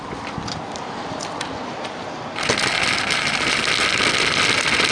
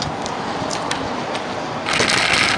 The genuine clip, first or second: second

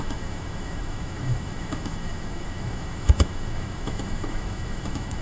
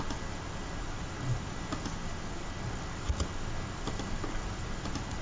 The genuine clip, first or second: second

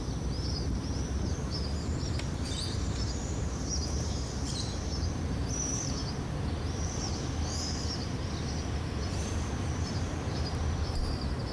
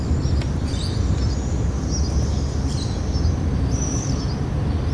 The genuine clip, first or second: second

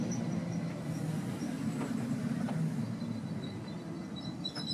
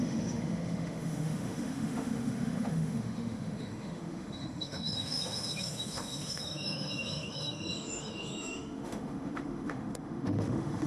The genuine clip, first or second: first